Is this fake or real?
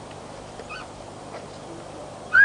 real